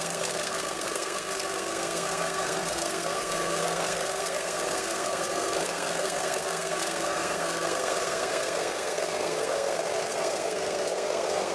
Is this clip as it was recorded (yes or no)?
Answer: no